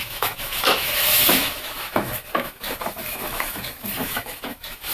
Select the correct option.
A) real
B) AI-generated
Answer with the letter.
B